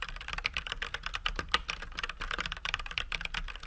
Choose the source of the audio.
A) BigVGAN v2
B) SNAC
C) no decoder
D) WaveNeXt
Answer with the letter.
C